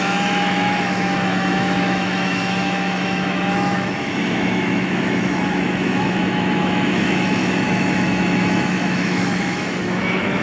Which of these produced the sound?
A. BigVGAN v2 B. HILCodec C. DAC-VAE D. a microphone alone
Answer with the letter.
C